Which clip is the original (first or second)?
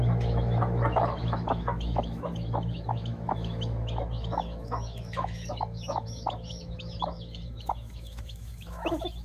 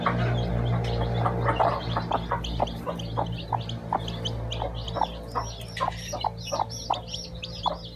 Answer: second